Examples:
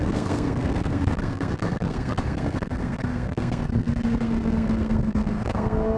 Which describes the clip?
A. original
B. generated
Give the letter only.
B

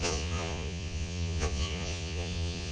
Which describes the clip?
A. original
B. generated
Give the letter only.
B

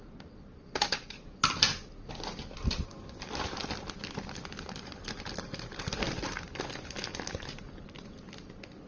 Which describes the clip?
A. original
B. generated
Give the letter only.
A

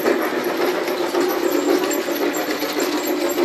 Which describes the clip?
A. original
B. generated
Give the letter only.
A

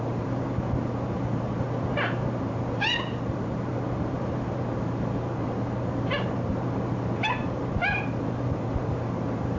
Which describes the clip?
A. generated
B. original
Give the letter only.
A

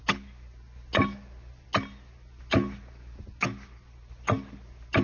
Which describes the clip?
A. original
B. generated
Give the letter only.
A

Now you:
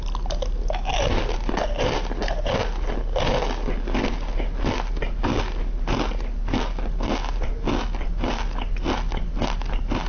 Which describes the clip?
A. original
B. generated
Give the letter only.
A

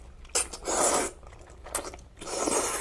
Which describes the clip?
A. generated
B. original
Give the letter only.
B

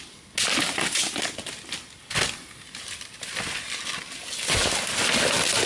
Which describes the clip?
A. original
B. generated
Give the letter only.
A